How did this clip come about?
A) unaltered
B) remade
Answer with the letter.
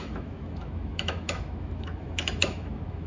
B